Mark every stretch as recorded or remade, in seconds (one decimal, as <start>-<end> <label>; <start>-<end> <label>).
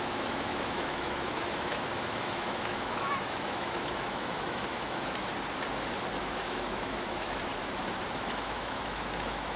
0.0-5.3 remade; 5.3-6.2 recorded; 6.2-7.5 remade; 7.5-8.1 recorded; 8.1-9.6 remade